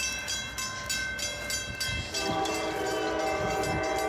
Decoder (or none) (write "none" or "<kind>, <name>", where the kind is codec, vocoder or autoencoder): none